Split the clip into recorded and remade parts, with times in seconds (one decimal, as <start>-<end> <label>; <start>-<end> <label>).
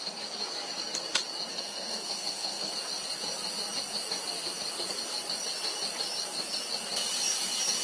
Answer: 0.0-1.5 recorded; 1.5-2.7 remade; 2.7-7.8 recorded